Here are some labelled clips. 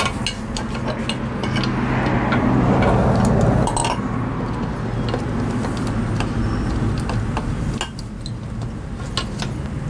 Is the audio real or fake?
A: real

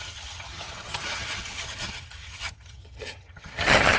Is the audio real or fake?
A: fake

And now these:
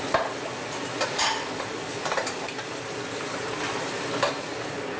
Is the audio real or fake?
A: real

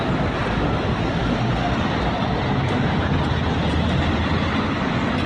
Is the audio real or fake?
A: real